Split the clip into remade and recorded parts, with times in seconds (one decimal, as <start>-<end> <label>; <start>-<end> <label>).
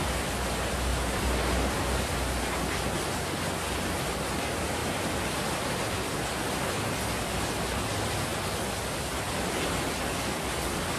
0.0-0.9 recorded; 0.9-2.6 remade; 2.6-4.8 recorded; 4.8-5.7 remade; 5.7-11.0 recorded